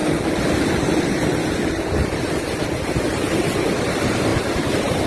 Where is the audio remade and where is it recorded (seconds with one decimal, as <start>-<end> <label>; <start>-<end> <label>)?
0.0-4.3 recorded; 4.3-5.1 remade